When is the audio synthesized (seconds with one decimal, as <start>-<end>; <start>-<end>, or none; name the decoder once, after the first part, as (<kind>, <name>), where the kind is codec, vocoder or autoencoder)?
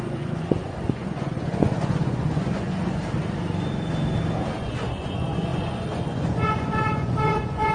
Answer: 0.0-3.0 (vocoder, Vocos); 4.6-7.7